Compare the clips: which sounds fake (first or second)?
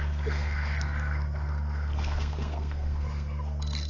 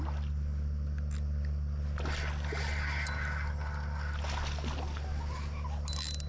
first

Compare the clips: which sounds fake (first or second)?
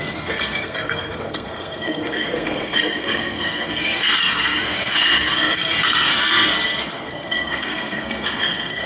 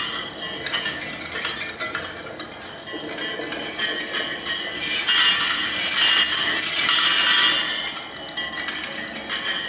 first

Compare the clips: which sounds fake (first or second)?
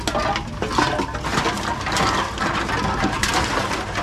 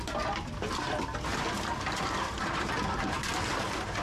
second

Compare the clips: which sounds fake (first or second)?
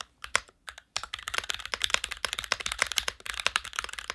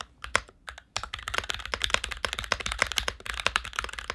first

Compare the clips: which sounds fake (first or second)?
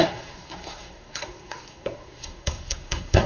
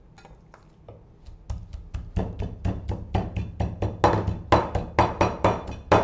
first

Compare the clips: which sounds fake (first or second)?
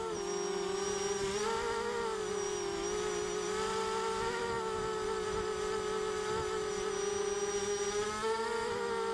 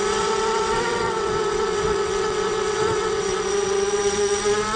second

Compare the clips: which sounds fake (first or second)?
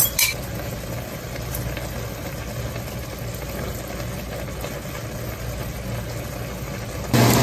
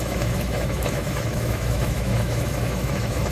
second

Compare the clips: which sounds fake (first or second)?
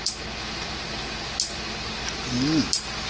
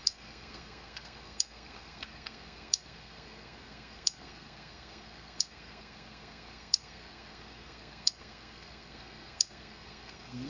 second